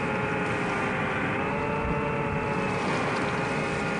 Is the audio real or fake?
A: real